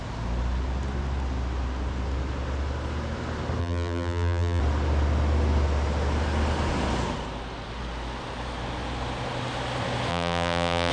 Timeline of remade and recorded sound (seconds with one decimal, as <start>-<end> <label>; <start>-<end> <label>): 0.0-3.6 recorded; 3.6-4.6 remade; 4.6-10.1 recorded; 10.1-10.9 remade